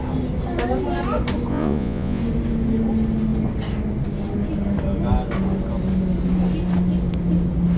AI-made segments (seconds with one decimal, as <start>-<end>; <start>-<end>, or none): 1.5-2.2